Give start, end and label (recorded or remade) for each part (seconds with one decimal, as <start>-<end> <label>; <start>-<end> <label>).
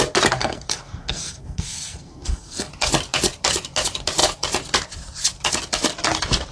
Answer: 0.0-0.4 recorded; 0.4-2.7 remade; 2.7-6.5 recorded